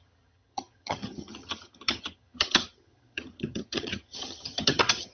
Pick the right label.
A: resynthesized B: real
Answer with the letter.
A